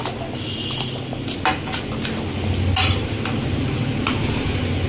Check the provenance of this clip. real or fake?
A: real